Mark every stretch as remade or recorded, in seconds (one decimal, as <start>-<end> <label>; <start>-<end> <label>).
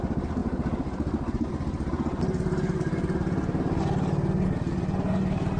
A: 0.0-5.6 recorded